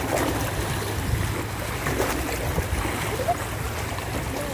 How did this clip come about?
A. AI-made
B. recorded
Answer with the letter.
B